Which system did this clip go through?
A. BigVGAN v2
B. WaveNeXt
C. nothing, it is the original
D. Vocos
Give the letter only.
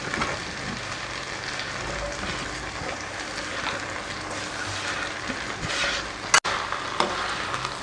C